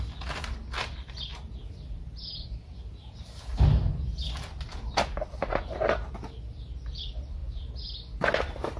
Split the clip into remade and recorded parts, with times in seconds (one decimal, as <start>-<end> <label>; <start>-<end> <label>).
0.0-8.8 recorded